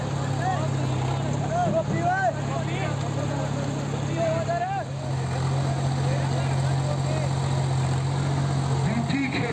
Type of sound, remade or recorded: recorded